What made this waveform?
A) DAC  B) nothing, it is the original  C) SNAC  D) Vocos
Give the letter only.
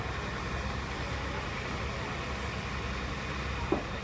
B